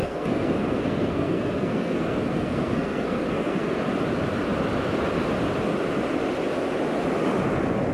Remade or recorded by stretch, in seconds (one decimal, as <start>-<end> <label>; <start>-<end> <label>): 0.0-3.8 remade; 3.8-7.9 recorded